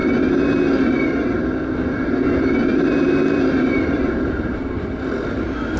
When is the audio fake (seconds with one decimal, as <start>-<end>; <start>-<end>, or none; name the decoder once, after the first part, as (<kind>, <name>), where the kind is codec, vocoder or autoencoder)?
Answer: 2.7-4.9 (vocoder, BigVGAN v2)